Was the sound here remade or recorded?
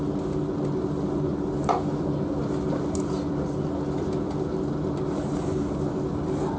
recorded